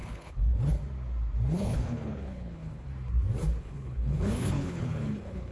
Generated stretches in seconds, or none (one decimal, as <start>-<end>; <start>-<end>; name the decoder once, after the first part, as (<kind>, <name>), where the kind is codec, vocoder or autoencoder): 0.0-0.8 (codec, HILCodec); 1.5-2.9; 3.6-5.5